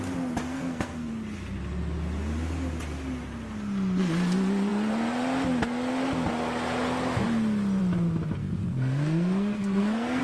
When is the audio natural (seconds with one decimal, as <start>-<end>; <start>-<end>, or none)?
0.0-0.5; 1.1-8.4